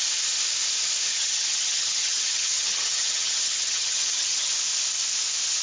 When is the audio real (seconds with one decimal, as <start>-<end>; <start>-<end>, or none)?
0.0-1.1; 4.5-5.6